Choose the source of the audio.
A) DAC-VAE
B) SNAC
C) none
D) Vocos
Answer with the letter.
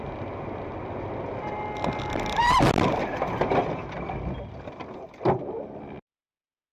C